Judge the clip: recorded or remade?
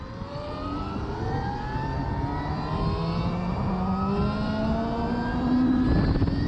recorded